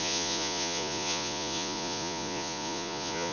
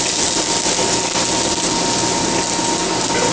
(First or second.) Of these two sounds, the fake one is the first